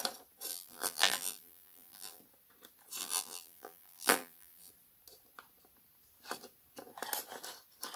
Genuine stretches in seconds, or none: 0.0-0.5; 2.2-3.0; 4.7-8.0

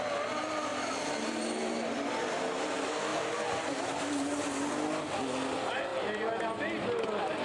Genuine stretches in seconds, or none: 0.0-0.7; 1.4-3.1; 4.7-5.9; 6.4-7.4

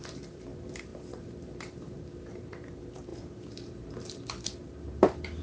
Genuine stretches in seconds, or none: none

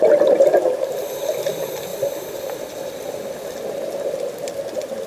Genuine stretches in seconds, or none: 0.0-1.9

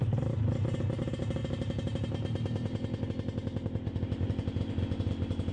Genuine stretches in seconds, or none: 0.0-5.5

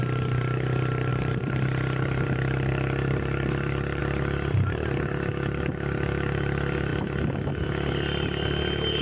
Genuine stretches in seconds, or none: 0.0-1.1; 4.0-9.0

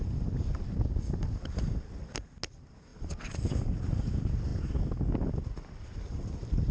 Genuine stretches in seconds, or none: 0.0-6.7

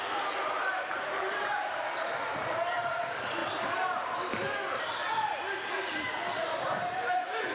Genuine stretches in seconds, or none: 3.4-6.4